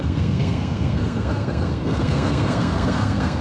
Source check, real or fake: fake